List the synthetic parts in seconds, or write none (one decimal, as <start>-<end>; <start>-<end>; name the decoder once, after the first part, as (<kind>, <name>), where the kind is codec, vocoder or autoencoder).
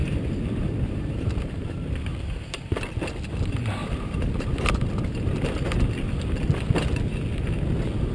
0.0-2.8 (vocoder, BigVGAN v2); 3.8-4.5